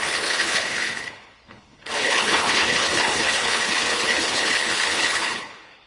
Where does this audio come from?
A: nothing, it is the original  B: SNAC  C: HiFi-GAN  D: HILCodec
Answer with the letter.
D